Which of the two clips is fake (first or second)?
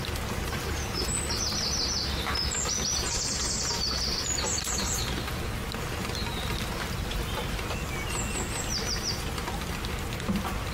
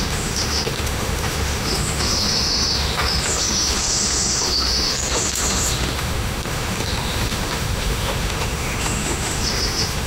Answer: second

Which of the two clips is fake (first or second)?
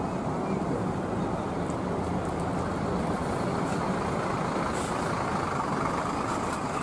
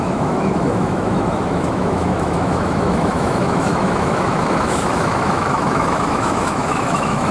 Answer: second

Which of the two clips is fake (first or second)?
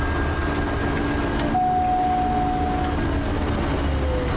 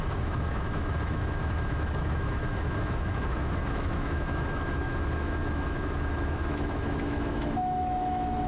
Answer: second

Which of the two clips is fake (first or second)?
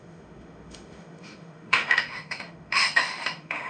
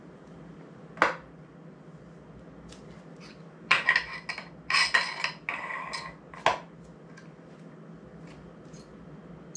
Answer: first